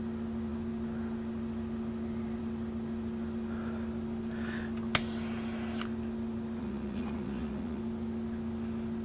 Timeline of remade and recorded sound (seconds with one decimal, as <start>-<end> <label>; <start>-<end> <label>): 0.0-6.6 recorded; 6.6-7.8 remade; 7.8-9.0 recorded